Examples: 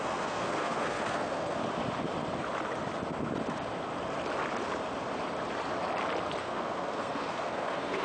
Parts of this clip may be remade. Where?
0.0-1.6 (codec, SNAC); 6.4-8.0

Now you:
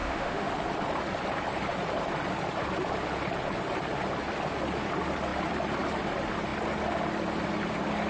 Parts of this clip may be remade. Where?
0.0-0.5 (autoencoder, DAC-VAE)

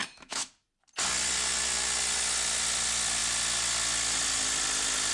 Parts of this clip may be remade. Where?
0.0-0.5 (autoencoder, DAC-VAE)